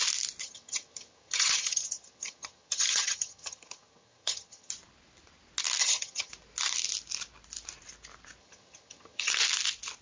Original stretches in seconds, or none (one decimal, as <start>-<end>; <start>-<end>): 0.0-0.4; 4.7-5.8; 6.3-8.4; 9.3-10.0